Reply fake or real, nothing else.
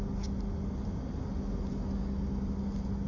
real